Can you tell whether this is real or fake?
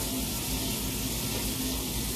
real